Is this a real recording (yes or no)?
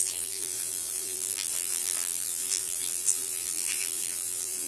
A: no